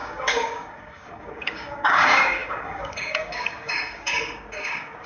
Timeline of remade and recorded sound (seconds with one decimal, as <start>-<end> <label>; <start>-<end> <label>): 0.0-5.1 remade

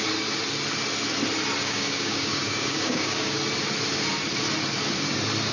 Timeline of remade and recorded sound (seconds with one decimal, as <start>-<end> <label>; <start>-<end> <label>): 0.0-1.6 recorded; 1.6-3.3 remade; 3.3-5.5 recorded